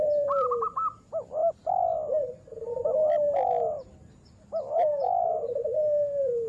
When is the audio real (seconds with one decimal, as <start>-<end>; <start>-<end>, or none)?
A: 1.4-2.7; 4.9-5.4